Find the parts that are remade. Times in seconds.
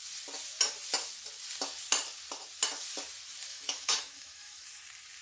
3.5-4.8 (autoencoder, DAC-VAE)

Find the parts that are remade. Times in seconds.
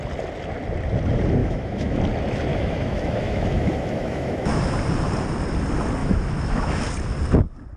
1.4-2.0 (autoencoder, DAC-VAE); 2.5-4.6; 6.0-6.8